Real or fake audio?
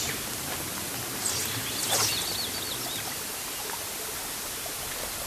real